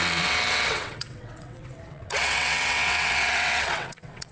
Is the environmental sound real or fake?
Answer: fake